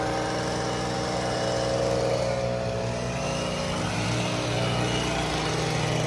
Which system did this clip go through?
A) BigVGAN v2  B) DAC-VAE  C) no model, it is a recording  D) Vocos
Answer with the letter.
C